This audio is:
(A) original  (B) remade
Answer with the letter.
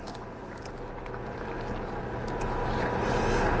A